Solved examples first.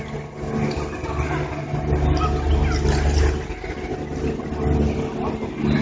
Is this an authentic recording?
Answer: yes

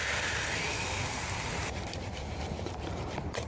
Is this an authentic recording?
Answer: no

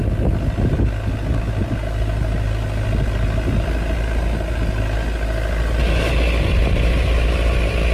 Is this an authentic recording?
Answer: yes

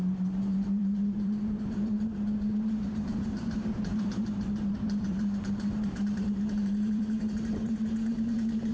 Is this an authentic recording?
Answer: no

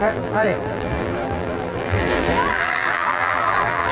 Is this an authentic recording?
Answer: no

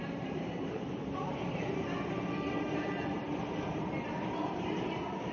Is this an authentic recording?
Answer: no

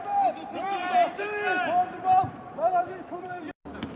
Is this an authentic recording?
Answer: no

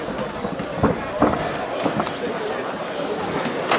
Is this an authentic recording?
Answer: yes